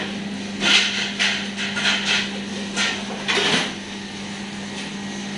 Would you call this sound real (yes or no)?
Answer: yes